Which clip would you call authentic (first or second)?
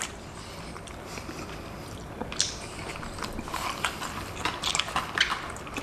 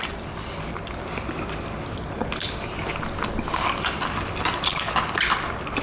second